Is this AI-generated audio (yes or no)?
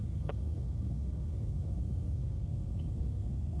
yes